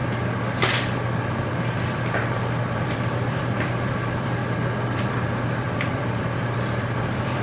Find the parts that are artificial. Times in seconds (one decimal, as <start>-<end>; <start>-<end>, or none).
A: 0.6-4.4; 5.1-7.4